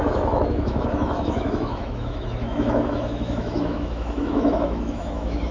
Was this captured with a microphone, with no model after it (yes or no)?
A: no